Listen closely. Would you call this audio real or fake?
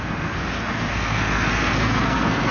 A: fake